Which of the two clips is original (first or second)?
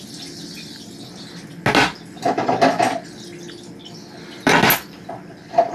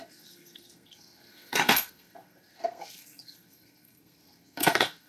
first